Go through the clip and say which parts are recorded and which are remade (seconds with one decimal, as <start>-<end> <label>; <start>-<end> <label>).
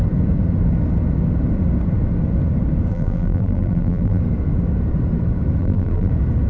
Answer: 0.0-2.9 recorded; 2.9-4.2 remade; 4.2-5.6 recorded; 5.6-6.1 remade; 6.1-6.5 recorded